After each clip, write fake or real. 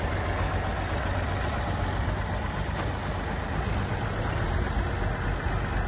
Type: real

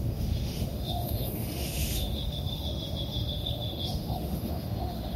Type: fake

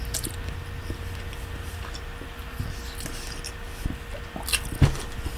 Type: real